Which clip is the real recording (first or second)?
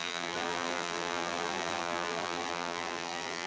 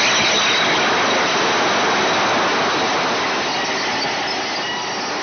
second